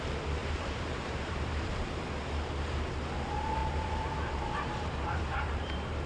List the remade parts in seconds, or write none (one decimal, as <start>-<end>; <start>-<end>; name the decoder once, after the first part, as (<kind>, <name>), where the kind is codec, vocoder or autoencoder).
0.4-2.0 (vocoder, BigVGAN v2); 3.6-6.1